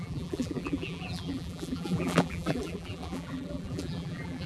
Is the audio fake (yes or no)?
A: yes